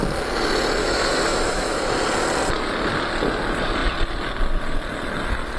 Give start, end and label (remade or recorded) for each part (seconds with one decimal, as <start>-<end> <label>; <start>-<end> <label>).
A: 0.0-0.8 recorded; 0.8-1.8 remade; 1.8-5.6 recorded